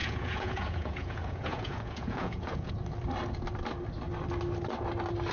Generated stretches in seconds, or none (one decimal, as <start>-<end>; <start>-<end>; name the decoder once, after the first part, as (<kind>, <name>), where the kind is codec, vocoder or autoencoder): 0.0-2.7 (vocoder, Vocos)